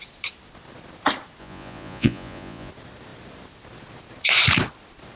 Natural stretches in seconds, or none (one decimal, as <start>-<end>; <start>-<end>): 0.0-1.4; 2.7-5.2